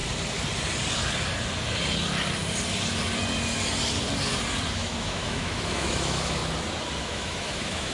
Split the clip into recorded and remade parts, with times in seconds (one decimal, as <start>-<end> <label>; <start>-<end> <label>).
0.0-4.7 recorded; 4.7-6.4 remade; 6.4-7.0 recorded; 7.0-7.9 remade